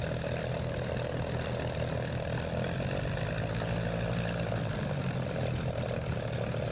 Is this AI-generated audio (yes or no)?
no